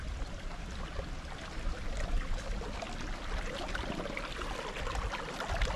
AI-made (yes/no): no